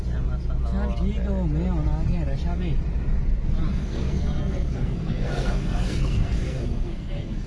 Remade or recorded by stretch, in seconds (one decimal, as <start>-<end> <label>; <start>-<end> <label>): 0.0-3.7 recorded; 3.7-7.5 remade